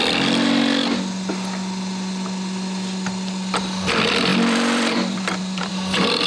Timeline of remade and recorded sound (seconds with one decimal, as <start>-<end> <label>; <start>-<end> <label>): 0.0-4.3 recorded; 4.3-5.7 remade; 5.7-6.3 recorded